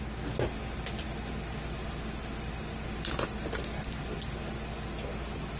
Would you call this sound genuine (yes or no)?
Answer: yes